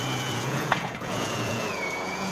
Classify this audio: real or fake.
fake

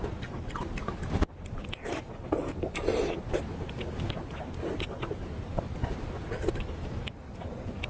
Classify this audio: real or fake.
real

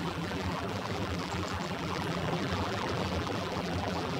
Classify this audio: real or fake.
fake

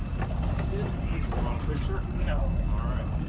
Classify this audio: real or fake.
real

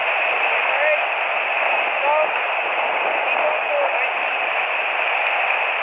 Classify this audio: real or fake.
real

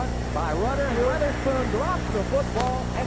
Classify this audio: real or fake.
real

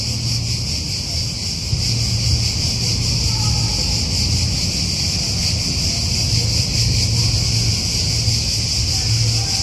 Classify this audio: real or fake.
real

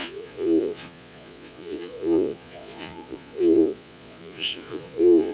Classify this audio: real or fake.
fake